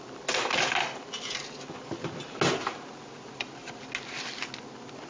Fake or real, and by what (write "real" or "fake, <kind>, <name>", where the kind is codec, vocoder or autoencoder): real